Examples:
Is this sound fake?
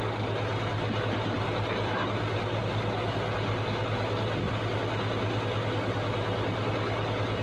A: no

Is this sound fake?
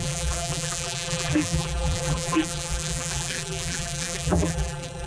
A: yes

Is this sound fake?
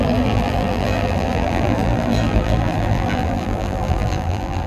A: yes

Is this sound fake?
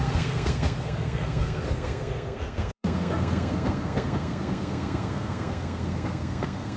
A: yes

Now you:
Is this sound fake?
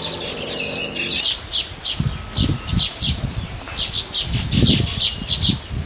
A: no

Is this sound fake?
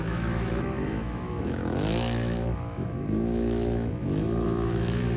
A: yes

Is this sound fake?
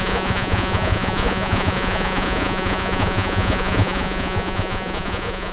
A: yes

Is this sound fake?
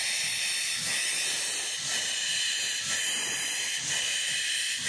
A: no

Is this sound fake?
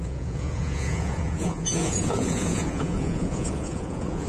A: yes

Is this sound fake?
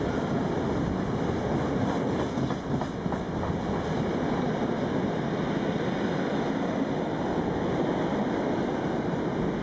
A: no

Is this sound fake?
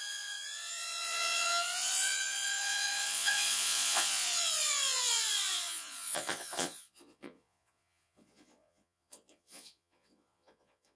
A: yes